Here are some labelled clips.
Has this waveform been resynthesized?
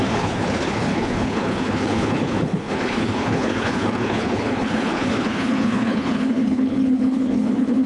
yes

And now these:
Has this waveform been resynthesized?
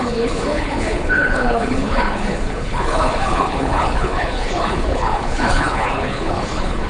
yes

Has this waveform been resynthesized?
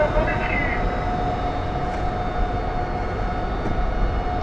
no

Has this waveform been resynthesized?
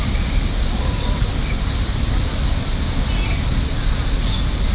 no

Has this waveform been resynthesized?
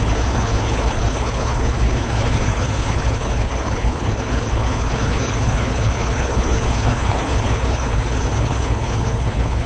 yes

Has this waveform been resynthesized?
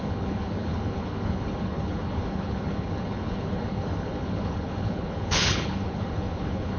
yes